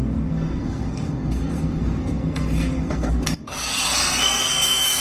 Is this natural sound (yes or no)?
no